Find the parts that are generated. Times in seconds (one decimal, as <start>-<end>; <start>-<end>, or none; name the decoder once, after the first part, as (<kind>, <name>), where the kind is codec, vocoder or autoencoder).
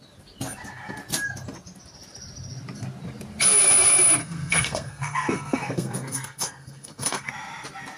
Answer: 4.2-7.3 (codec, SNAC)